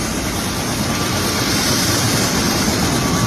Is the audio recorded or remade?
remade